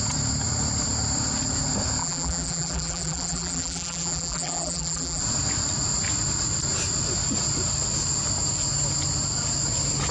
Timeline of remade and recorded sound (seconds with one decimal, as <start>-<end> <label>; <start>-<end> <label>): 0.0-2.0 recorded; 2.0-5.2 remade; 5.2-10.1 recorded